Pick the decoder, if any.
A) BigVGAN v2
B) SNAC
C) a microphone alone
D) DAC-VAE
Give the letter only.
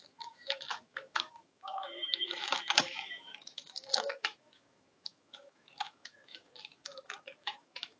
D